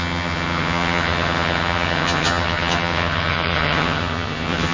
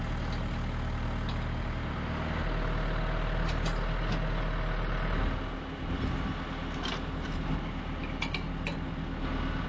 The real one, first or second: second